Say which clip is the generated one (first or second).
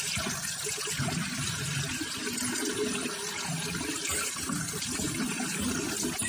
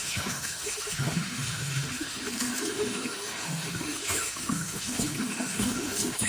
second